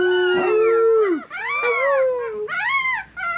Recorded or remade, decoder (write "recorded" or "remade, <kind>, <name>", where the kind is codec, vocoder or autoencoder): recorded